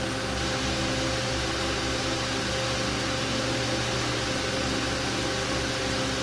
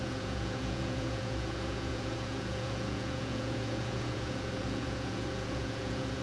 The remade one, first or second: second